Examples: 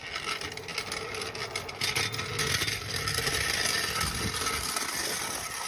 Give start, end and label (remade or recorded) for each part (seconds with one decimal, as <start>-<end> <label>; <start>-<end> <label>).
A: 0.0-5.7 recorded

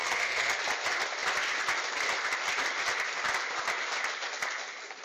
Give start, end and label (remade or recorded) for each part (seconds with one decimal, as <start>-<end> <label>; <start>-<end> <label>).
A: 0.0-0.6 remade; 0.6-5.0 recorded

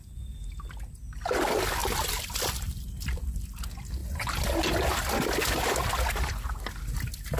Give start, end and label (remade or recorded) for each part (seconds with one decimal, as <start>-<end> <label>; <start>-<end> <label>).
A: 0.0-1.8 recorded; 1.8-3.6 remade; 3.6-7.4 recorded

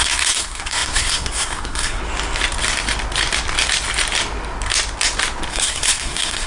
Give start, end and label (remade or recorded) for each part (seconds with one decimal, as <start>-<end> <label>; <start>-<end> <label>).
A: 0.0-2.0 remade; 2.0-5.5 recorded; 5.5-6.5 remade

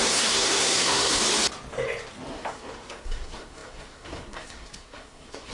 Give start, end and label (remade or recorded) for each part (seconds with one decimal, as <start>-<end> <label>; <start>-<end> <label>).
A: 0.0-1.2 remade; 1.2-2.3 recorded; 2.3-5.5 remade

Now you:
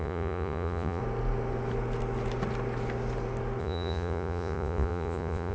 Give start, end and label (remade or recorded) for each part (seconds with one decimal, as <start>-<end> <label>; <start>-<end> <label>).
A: 0.0-1.0 remade; 1.0-3.6 recorded; 3.6-5.5 remade